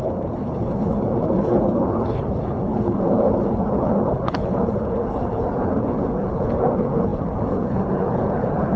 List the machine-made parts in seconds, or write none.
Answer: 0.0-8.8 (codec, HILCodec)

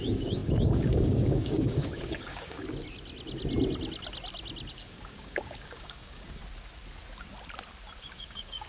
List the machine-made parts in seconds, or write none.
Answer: 0.0-2.6 (codec, DAC); 4.7-6.4; 8.0-8.7

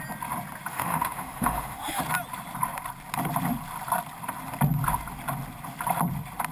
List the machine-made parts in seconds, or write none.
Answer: 0.7-2.0 (autoencoder, DAC-VAE)